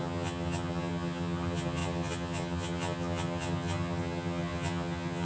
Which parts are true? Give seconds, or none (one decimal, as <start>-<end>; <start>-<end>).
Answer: none